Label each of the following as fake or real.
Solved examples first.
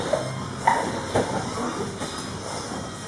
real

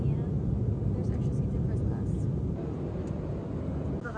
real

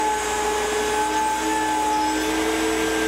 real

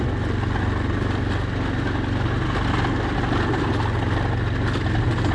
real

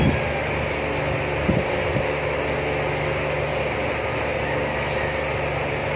real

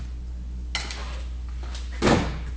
real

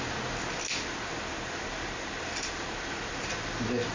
real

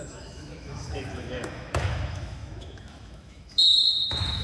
fake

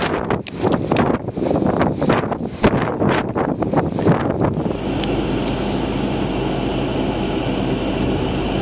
real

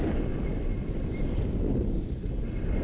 real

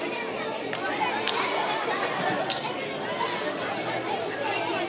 real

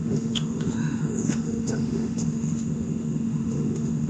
fake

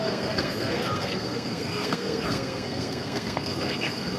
fake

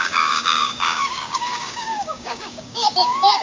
fake